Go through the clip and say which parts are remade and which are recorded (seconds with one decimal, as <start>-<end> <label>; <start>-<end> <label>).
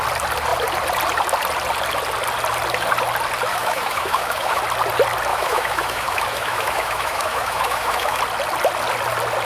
0.0-3.5 recorded; 3.5-4.6 remade; 4.6-5.3 recorded; 5.3-8.2 remade; 8.2-9.4 recorded